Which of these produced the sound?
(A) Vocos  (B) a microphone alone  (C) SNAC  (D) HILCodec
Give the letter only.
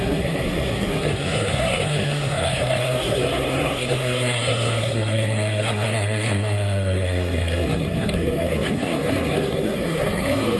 C